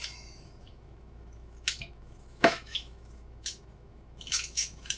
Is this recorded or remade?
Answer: remade